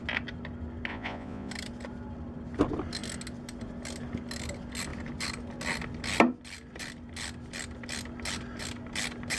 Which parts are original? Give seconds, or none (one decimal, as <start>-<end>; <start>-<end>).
0.0-0.9; 1.5-9.4